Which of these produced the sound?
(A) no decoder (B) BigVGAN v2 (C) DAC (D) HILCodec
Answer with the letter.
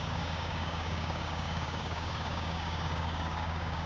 C